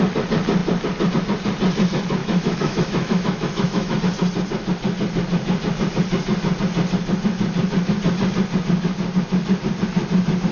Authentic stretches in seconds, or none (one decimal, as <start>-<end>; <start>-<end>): 0.0-2.2; 4.0-10.5